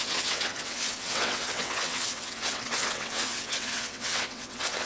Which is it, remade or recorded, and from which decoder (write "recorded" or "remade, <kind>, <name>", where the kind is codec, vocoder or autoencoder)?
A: remade, vocoder, WaveNeXt